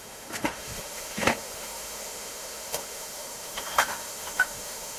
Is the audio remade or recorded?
remade